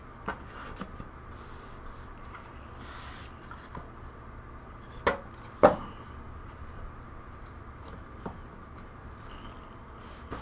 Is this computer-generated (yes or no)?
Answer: no